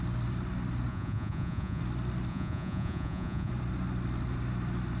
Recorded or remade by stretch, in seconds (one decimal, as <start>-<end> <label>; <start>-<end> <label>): 0.0-0.9 recorded; 0.9-1.8 remade; 1.8-2.3 recorded; 2.3-3.5 remade; 3.5-5.0 recorded